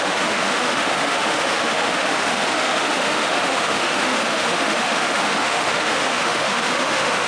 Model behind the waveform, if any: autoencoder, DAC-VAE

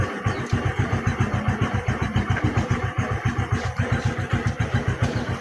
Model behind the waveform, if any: vocoder, BigVGAN v2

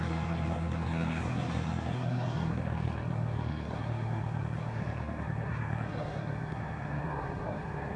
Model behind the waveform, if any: codec, SNAC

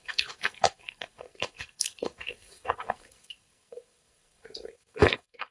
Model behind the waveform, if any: codec, SNAC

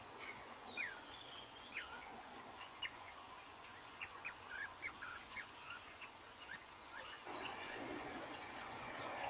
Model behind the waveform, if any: vocoder, Vocos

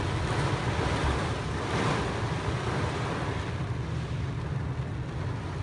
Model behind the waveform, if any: none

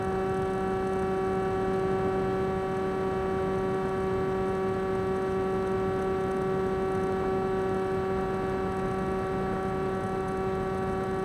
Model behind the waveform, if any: none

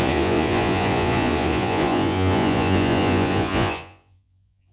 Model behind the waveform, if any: vocoder, Vocos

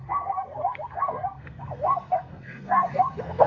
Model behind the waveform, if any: codec, SNAC